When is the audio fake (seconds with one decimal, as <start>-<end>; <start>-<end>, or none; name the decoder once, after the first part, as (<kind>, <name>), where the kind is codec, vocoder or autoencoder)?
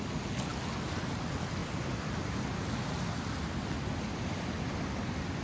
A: none